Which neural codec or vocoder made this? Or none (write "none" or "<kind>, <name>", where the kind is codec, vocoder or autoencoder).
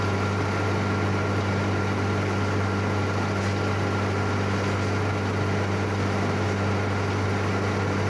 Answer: none